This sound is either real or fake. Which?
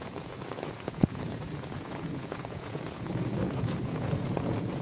fake